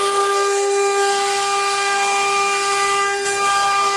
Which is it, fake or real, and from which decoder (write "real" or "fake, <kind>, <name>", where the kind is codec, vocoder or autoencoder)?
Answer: fake, codec, SNAC